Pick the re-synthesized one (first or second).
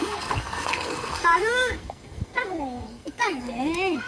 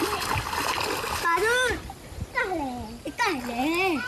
first